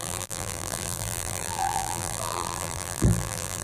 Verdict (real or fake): fake